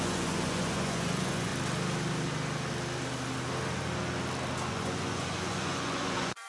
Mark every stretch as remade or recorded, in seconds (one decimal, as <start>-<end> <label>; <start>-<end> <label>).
0.0-1.5 remade; 1.5-4.7 recorded; 4.7-6.5 remade